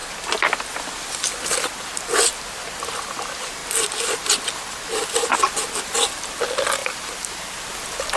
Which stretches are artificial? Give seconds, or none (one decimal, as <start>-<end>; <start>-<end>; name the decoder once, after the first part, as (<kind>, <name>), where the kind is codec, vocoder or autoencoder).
none